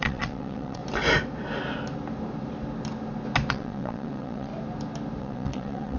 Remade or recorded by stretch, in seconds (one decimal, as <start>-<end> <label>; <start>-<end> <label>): 0.0-0.8 remade; 0.8-3.5 recorded; 3.5-4.5 remade; 4.5-5.2 recorded; 5.2-6.0 remade